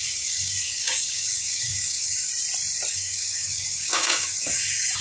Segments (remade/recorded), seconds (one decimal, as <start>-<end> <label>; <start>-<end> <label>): 0.0-2.3 remade; 2.3-2.9 recorded; 2.9-5.0 remade